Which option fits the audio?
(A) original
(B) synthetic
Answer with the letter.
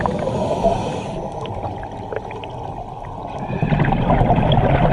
A